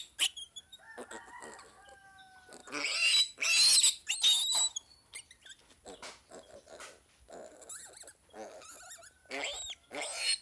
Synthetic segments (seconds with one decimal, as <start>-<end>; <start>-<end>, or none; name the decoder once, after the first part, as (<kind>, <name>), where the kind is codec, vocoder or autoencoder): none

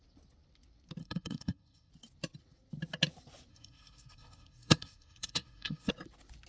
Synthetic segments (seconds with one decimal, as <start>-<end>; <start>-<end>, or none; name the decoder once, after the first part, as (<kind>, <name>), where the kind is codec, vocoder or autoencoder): 1.0-1.9 (codec, SNAC); 3.5-5.9

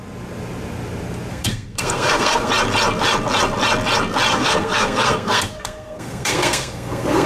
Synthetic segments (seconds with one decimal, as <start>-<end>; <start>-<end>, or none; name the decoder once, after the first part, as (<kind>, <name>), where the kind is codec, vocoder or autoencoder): 1.3-2.5 (codec, SNAC); 4.3-7.3

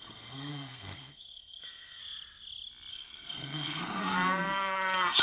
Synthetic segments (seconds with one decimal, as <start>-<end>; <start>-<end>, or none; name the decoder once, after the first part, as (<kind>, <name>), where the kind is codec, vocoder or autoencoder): 0.0-2.0 (codec, SNAC); 2.9-5.2

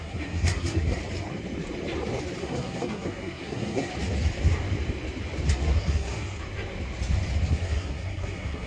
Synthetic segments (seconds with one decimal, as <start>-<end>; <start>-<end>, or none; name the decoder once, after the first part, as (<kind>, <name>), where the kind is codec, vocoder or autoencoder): 0.0-1.0 (codec, SNAC); 2.4-3.9; 5.5-6.4; 7.5-8.7